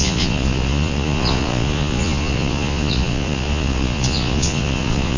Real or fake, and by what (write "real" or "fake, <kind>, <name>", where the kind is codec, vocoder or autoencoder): fake, vocoder, Vocos